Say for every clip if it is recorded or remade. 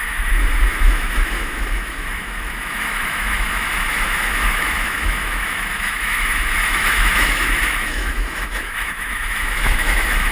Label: remade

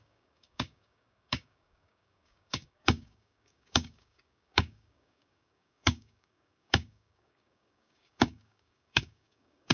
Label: remade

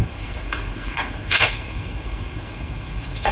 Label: remade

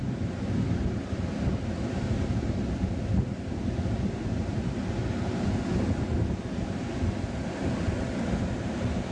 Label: recorded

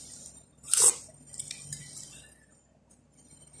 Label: recorded